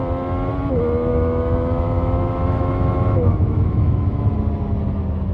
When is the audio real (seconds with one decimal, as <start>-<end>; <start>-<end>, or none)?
0.0-1.1; 4.3-5.3